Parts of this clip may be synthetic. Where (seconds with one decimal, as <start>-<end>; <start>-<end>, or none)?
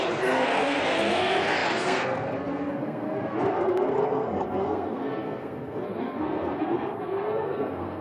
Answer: 0.0-8.0